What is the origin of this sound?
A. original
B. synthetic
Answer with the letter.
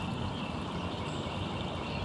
A